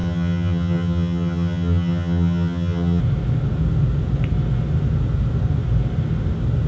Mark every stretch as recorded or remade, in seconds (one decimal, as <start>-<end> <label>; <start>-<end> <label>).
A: 0.0-3.0 remade; 3.0-6.7 recorded